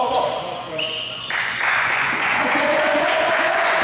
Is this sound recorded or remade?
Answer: remade